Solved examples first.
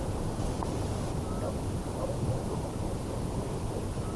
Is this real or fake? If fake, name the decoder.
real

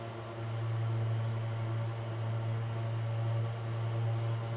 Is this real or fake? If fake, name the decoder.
real